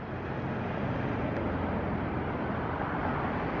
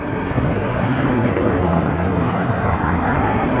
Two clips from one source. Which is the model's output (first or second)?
second